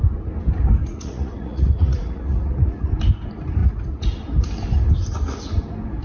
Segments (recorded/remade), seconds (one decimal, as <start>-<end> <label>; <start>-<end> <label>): 0.0-0.8 recorded; 0.8-2.9 remade; 2.9-6.0 recorded